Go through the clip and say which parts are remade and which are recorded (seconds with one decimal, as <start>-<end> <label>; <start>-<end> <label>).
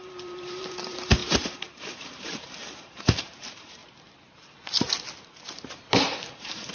0.0-3.8 remade; 3.8-6.0 recorded; 6.0-6.7 remade